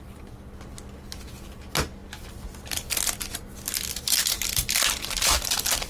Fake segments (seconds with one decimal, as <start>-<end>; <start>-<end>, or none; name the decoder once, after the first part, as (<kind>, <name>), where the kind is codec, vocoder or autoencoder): none